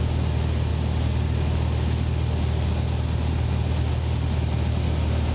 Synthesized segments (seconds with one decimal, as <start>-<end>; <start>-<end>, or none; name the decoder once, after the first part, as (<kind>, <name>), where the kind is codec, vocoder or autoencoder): none